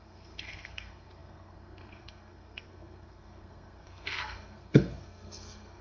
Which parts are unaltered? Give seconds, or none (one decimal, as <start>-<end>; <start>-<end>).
none